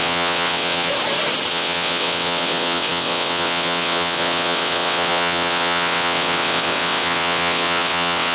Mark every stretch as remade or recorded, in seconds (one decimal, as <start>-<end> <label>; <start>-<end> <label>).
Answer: 0.0-0.9 remade; 0.9-1.5 recorded; 1.5-8.3 remade